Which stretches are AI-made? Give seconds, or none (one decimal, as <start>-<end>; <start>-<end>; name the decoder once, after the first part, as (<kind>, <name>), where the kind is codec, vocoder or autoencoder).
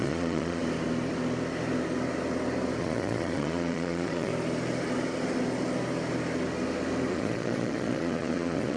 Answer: 0.0-0.6 (vocoder, Vocos); 2.8-4.3; 7.1-8.8